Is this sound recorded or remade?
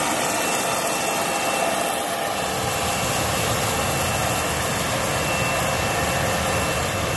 recorded